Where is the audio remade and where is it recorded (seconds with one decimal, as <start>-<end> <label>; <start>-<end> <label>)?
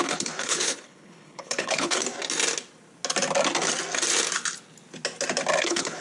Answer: 0.0-2.0 remade; 2.0-5.6 recorded; 5.6-6.0 remade